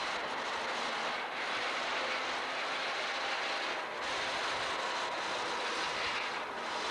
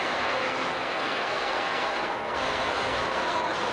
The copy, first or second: second